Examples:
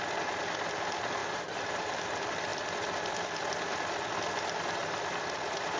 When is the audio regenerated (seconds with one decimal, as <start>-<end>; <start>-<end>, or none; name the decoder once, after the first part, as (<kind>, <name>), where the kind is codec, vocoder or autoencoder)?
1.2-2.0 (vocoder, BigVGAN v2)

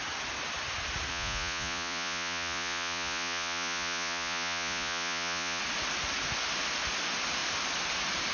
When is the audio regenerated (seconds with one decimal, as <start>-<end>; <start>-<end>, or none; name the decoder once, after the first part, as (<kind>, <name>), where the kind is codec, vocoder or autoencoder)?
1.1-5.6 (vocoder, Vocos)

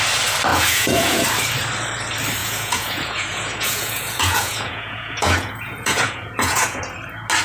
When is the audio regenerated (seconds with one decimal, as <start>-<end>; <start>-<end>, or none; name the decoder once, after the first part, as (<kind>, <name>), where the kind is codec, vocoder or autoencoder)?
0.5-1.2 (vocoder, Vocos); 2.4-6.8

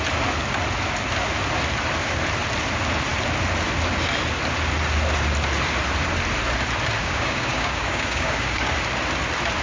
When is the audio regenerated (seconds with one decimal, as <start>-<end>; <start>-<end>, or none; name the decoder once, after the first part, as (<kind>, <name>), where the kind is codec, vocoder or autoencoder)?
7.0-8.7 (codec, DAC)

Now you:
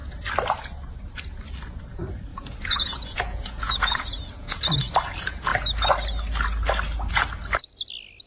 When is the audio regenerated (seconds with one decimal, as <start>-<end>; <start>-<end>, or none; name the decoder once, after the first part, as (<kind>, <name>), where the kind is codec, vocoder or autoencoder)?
2.3-4.6 (vocoder, Vocos)

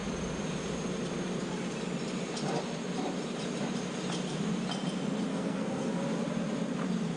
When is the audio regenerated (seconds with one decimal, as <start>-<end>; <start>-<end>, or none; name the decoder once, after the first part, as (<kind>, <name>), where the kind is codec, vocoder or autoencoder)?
5.3-5.9 (codec, SNAC)

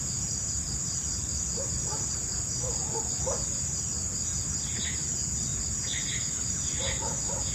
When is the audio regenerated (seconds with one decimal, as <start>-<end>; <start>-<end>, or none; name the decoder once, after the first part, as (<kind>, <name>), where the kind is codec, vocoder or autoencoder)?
none

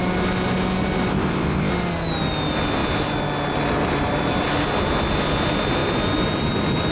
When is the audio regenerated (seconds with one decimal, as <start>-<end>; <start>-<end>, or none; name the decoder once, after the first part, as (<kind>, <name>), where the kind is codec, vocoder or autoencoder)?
1.1-1.7 (codec, ZipCodec)